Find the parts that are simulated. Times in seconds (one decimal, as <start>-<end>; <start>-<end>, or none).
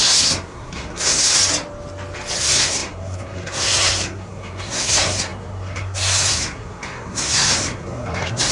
0.0-1.4; 2.4-8.5